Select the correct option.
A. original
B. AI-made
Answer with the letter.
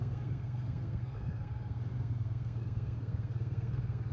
B